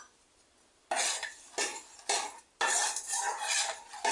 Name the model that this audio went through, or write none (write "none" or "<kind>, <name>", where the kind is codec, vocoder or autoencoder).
none